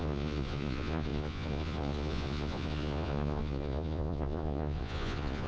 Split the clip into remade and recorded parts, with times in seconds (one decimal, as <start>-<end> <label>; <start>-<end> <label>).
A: 0.0-5.5 remade